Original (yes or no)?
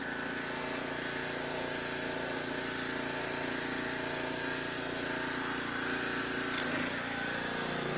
yes